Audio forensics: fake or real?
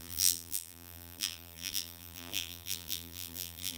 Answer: fake